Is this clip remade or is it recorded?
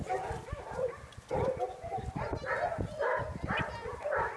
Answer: recorded